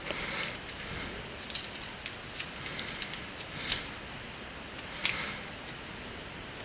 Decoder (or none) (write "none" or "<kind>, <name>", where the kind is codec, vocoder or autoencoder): none